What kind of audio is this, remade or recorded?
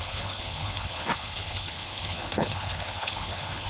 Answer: remade